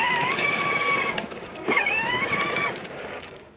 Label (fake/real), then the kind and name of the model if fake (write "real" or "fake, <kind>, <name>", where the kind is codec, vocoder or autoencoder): fake, codec, DAC